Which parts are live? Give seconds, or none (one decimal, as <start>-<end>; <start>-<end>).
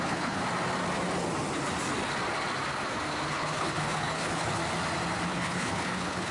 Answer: 0.4-3.3; 4.6-5.3